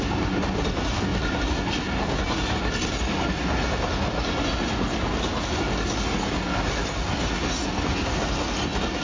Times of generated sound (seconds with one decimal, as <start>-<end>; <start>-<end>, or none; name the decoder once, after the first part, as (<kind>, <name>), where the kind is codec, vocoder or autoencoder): 1.1-2.0 (vocoder, BigVGAN v2)